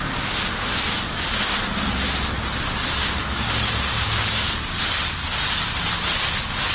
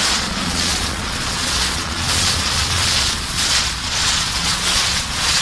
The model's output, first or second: second